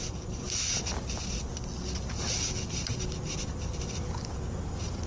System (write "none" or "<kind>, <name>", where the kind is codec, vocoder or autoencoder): none